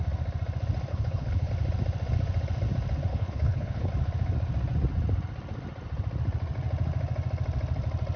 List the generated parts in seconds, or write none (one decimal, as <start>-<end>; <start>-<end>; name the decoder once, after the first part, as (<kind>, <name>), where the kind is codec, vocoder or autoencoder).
0.9-1.5 (codec, HILCodec); 3.1-3.9